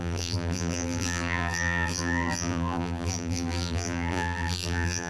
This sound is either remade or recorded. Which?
remade